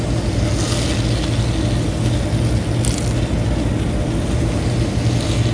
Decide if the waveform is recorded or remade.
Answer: recorded